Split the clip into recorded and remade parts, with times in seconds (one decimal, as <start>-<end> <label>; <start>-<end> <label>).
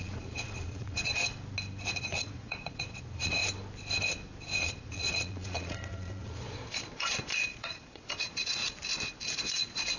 0.0-1.2 remade; 1.2-1.9 recorded; 1.9-3.4 remade; 3.4-4.6 recorded; 4.6-8.6 remade; 8.6-9.4 recorded; 9.4-10.0 remade